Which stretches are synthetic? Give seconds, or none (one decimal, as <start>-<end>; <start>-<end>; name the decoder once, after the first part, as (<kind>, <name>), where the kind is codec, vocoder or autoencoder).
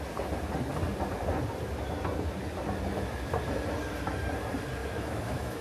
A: 4.8-5.6 (autoencoder, DAC-VAE)